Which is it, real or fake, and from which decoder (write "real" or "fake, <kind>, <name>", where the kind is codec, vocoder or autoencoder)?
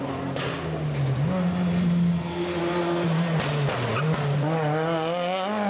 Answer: real